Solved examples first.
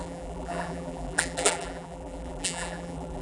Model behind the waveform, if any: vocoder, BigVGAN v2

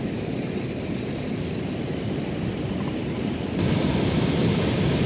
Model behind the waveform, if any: none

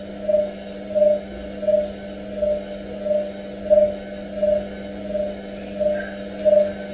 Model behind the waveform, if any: none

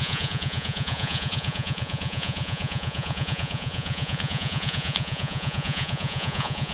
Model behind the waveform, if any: vocoder, Vocos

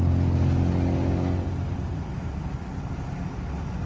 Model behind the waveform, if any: none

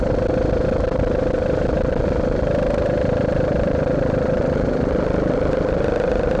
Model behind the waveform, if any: none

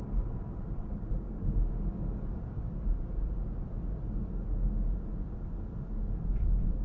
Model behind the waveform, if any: none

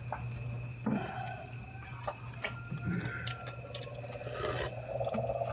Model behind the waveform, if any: none